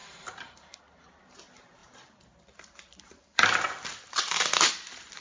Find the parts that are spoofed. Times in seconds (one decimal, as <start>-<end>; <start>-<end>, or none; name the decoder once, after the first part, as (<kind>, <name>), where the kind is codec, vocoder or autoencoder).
0.0-0.8 (vocoder, BigVGAN v2); 1.8-4.7